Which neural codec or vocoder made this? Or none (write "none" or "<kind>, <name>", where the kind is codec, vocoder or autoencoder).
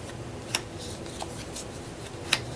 none